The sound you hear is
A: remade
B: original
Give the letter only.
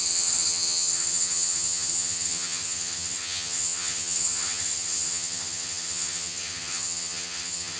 A